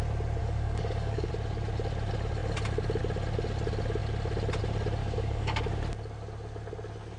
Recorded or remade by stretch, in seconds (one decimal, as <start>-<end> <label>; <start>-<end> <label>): 0.0-0.4 recorded; 0.4-1.3 remade; 1.3-5.0 recorded; 5.0-5.6 remade; 5.6-7.2 recorded